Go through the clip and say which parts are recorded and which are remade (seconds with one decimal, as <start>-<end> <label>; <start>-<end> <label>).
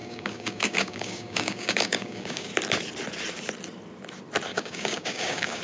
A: 0.0-2.5 remade; 2.5-4.5 recorded; 4.5-5.6 remade